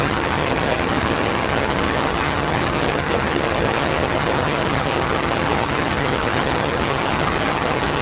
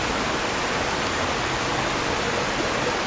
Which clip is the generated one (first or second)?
first